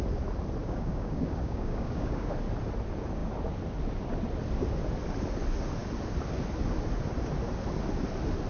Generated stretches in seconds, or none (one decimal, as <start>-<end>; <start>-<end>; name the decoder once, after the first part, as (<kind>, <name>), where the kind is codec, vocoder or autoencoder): 0.6-2.3 (codec, DAC)